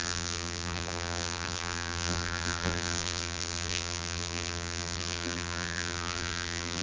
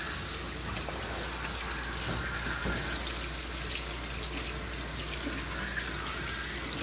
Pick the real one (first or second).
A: second